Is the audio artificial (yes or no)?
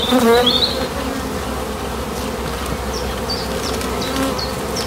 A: no